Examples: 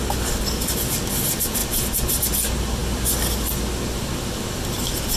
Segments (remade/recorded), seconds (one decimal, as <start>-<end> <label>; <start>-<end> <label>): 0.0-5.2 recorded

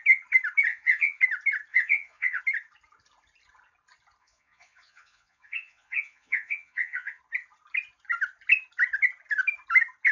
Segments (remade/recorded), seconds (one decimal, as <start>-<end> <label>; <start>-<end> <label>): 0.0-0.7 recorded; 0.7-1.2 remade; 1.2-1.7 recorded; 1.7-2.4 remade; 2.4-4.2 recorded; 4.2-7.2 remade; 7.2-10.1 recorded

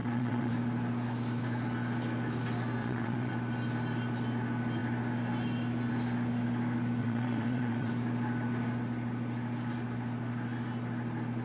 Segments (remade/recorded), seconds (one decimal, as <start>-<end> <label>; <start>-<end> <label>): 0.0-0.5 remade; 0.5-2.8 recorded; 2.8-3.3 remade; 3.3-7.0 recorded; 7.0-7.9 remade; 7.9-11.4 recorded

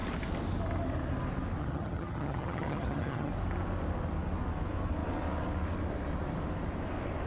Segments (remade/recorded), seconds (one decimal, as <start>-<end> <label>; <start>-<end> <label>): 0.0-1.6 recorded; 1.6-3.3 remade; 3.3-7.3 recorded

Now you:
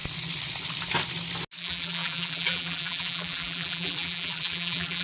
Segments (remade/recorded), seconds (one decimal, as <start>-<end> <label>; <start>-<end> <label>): 0.0-1.6 recorded; 1.6-5.0 remade

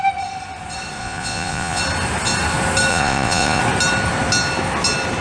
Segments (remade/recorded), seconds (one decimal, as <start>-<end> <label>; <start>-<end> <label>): 0.0-1.0 recorded; 1.0-1.8 remade; 1.8-2.9 recorded; 2.9-3.6 remade; 3.6-5.2 recorded

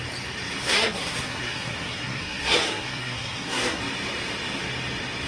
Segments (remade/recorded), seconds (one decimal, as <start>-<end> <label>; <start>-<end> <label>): 0.0-0.6 recorded; 0.6-3.8 remade; 3.8-5.3 recorded

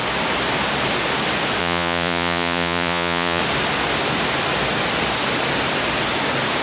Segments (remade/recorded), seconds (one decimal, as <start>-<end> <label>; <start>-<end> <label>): 0.0-1.6 recorded; 1.6-3.4 remade; 3.4-6.6 recorded